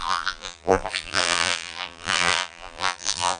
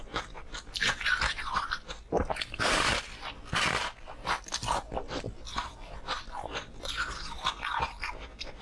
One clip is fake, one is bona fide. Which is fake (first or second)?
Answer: first